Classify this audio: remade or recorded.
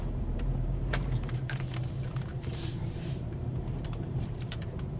remade